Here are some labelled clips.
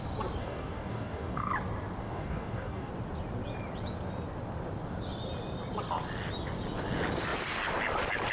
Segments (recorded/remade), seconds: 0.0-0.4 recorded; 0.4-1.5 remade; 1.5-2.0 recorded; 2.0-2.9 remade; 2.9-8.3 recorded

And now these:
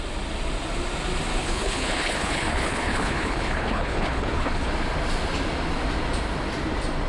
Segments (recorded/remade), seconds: 0.0-1.4 recorded; 1.4-4.7 remade; 4.7-7.1 recorded

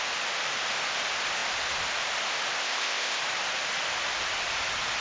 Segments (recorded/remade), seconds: 0.0-2.6 recorded; 2.6-3.2 remade; 3.2-5.0 recorded

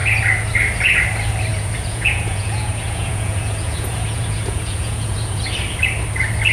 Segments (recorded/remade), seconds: 0.0-1.5 recorded; 1.5-5.4 remade; 5.4-6.5 recorded

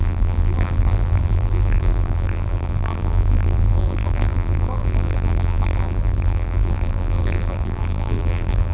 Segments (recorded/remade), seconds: 0.0-8.7 remade